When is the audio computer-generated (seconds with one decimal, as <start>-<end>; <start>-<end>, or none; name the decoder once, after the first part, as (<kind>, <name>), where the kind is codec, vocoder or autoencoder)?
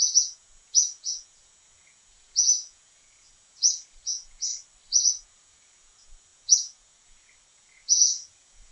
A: 0.0-4.5 (vocoder, Vocos); 5.1-8.7